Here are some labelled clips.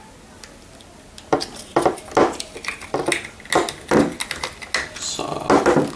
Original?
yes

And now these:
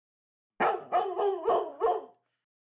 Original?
yes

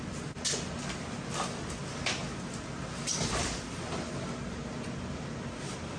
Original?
yes